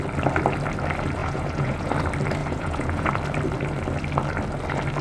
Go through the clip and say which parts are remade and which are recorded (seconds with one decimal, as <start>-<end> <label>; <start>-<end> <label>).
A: 0.0-1.2 recorded; 1.2-1.9 remade; 1.9-2.4 recorded; 2.4-3.1 remade; 3.1-5.0 recorded